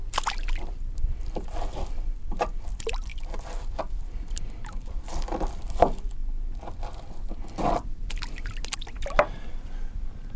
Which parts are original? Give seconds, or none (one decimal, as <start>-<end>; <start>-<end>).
0.0-0.6; 6.2-7.0